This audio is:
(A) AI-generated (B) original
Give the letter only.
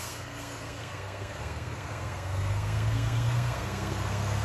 A